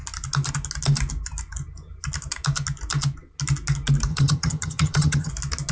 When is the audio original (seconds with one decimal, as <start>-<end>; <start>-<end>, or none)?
0.0-4.1; 5.3-5.7

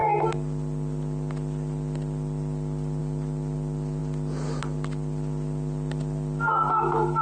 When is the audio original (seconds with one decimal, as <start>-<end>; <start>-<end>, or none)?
0.0-7.2

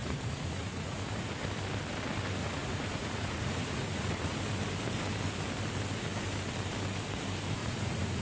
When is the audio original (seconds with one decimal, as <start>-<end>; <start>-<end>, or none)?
1.4-2.4; 4.4-7.6